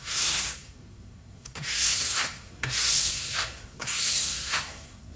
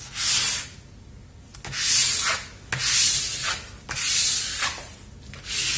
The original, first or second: second